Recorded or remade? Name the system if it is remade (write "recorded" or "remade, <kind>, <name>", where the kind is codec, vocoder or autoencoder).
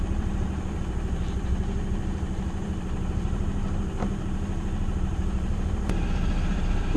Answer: remade, vocoder, BigVGAN v2